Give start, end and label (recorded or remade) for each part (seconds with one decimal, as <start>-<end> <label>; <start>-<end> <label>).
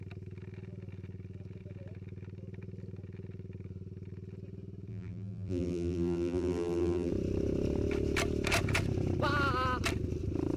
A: 0.0-4.9 recorded; 4.9-7.1 remade; 7.1-10.6 recorded